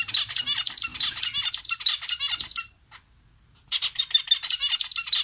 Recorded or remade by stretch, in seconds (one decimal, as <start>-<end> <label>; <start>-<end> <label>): 0.0-5.2 recorded